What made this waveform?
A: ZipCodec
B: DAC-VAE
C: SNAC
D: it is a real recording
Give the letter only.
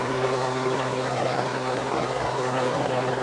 C